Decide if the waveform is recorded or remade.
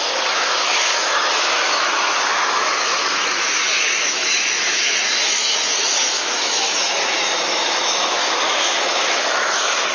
remade